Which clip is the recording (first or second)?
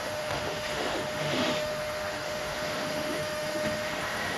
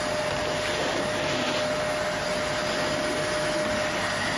second